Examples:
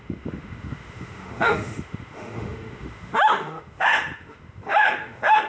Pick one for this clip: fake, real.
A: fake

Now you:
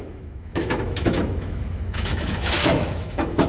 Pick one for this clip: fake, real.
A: fake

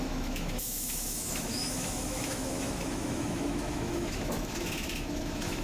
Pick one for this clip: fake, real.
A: fake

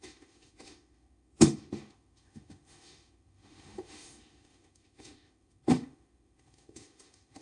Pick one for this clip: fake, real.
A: fake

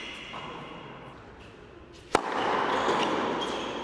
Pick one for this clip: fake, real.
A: real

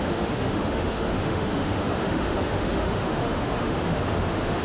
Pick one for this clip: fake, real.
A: fake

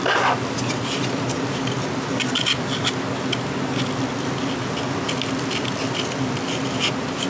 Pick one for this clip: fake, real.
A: real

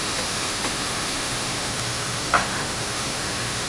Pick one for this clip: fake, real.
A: fake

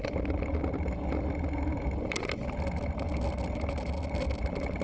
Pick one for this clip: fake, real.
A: real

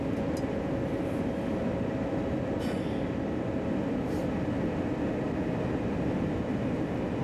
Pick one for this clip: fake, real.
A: real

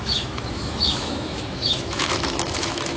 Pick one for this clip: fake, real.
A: fake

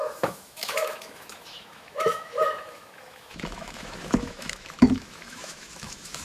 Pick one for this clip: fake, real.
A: fake